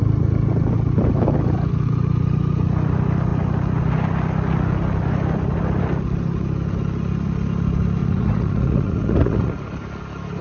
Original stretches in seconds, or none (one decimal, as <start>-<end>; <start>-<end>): 0.0-8.0; 9.5-10.4